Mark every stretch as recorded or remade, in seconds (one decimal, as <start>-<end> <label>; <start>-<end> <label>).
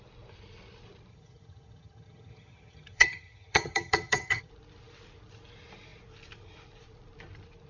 0.0-1.1 recorded; 1.1-4.5 remade; 4.5-7.7 recorded